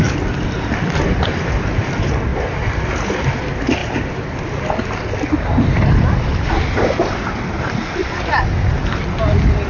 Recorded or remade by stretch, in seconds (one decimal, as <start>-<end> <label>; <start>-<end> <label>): 0.0-2.3 recorded; 2.3-3.2 remade; 3.2-3.8 recorded; 3.8-7.3 remade; 7.3-9.7 recorded